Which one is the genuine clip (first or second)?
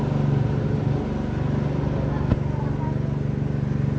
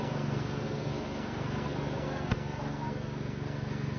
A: first